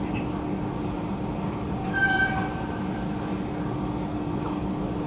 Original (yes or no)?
yes